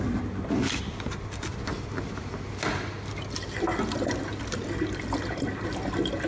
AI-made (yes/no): no